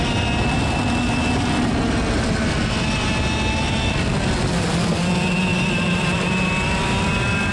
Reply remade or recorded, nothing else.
recorded